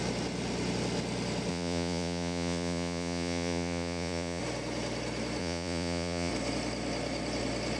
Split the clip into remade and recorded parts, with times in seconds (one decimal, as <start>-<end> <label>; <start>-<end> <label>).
0.0-1.5 recorded; 1.5-4.4 remade; 4.4-5.4 recorded; 5.4-6.3 remade; 6.3-7.8 recorded